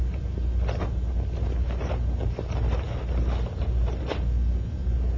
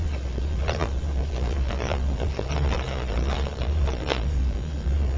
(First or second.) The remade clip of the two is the second